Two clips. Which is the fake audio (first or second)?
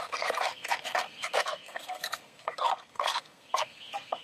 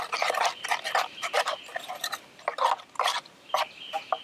first